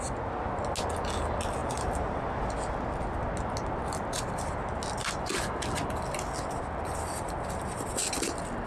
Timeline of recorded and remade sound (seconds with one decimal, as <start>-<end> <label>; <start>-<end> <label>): 0.0-1.6 recorded; 1.6-2.5 remade; 2.5-8.7 recorded